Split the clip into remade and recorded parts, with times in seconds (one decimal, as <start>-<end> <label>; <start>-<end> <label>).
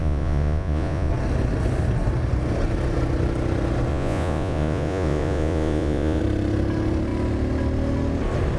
0.0-1.1 remade; 1.1-3.9 recorded; 3.9-6.2 remade; 6.2-8.6 recorded